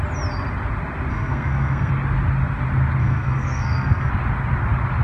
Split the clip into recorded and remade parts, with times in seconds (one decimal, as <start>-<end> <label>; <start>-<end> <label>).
0.0-1.1 recorded; 1.1-1.9 remade; 1.9-3.0 recorded; 3.0-4.1 remade; 4.1-5.0 recorded